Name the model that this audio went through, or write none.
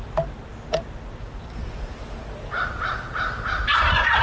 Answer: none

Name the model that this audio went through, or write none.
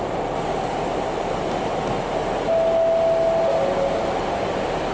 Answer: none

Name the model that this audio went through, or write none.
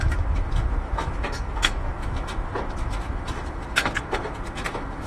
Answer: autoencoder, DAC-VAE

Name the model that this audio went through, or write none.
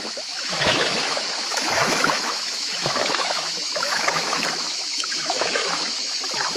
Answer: autoencoder, DAC-VAE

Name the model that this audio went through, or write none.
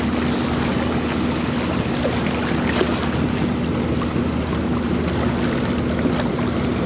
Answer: none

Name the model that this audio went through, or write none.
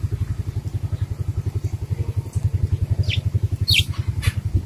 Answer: none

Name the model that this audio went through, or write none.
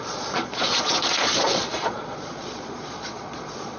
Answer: vocoder, Vocos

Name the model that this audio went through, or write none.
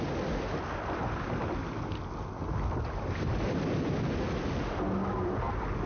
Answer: none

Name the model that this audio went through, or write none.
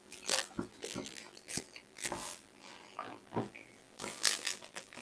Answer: vocoder, BigVGAN v2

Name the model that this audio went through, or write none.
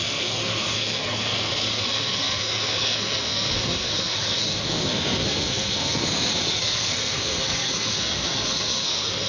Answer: codec, SNAC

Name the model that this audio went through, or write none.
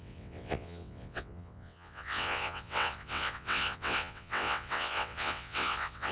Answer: vocoder, WaveNeXt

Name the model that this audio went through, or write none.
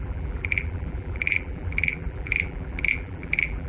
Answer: vocoder, BigVGAN v2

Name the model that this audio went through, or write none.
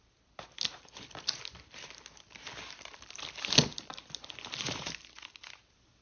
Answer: none